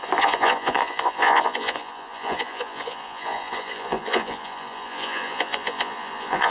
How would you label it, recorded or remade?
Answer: remade